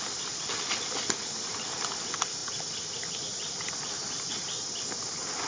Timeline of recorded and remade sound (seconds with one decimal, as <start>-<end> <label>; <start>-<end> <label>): 0.0-5.5 recorded